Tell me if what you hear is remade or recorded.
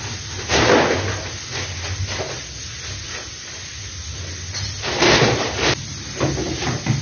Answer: recorded